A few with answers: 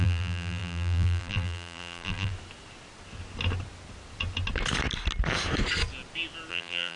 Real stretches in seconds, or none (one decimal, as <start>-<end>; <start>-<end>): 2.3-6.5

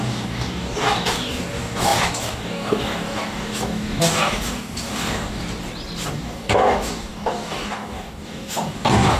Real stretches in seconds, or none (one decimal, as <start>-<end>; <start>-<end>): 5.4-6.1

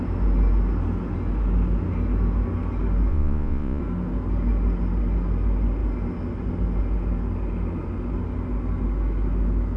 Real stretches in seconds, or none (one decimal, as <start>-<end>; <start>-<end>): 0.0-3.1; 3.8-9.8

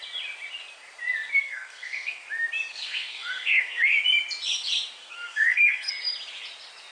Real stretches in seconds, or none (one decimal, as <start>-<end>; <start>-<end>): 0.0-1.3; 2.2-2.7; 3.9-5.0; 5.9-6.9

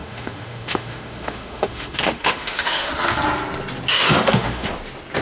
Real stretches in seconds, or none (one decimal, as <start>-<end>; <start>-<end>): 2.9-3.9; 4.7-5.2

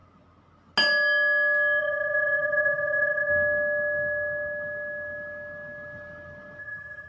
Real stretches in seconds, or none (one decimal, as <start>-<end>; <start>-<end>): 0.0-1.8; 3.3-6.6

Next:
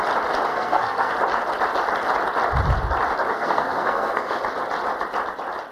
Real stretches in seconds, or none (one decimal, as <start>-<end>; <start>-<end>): 0.0-0.5; 1.1-3.3; 4.4-5.7

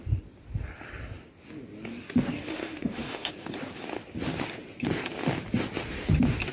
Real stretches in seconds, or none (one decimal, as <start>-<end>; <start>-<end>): 0.0-2.5; 3.3-6.5